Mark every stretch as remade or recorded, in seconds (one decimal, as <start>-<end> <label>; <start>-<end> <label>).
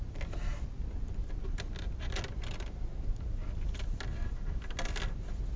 0.0-5.6 recorded